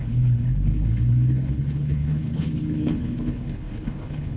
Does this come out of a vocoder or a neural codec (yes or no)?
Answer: yes